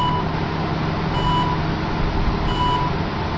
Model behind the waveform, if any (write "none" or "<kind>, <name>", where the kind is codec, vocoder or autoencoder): none